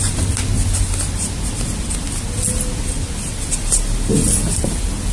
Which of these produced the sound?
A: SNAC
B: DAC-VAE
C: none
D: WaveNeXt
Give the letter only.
C